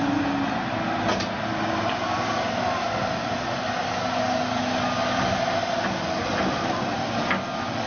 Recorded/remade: recorded